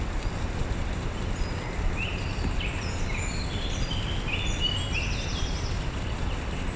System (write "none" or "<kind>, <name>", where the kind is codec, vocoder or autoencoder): none